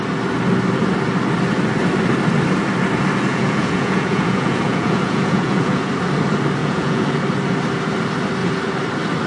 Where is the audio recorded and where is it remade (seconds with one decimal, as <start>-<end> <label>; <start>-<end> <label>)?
0.0-3.3 recorded; 3.3-5.9 remade; 5.9-6.6 recorded; 6.6-7.2 remade; 7.2-9.3 recorded